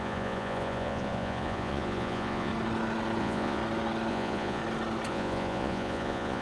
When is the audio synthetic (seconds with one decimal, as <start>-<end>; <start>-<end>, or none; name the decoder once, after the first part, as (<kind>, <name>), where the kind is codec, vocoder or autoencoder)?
0.0-2.5 (vocoder, Vocos); 3.2-3.6; 4.1-4.6; 5.1-6.4